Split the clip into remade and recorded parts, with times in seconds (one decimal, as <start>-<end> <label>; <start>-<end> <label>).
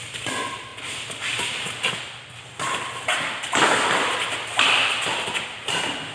0.0-6.1 recorded